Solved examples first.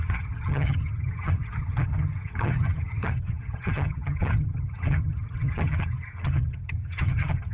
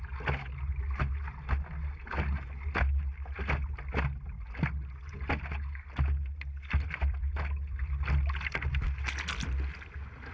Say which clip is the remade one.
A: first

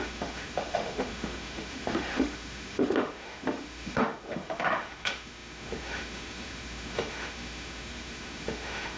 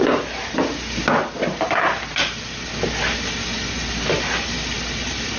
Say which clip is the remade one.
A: first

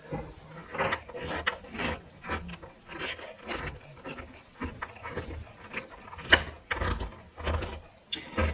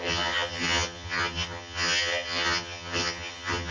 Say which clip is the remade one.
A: second